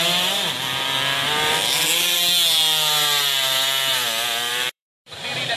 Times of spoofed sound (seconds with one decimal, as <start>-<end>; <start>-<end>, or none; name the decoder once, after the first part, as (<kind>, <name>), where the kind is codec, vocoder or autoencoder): 4.5-5.6 (vocoder, BigVGAN v2)